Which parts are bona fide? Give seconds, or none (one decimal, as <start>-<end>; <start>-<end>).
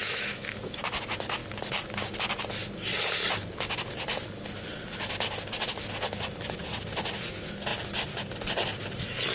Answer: 0.8-9.3